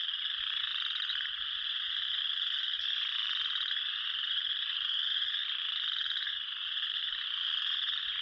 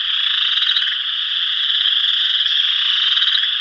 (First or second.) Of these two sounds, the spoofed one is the second